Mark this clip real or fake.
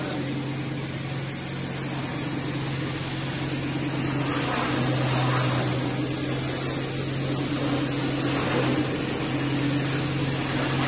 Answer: real